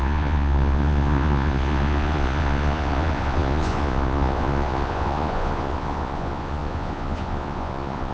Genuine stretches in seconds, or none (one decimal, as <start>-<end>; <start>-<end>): none